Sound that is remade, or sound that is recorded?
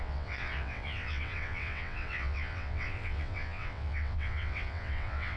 remade